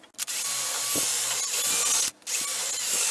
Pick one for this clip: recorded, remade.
recorded